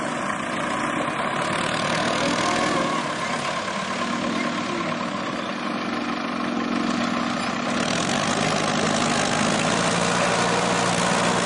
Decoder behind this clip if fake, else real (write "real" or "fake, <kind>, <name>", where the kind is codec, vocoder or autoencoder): real